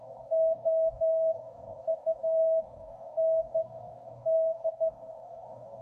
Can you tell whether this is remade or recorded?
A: remade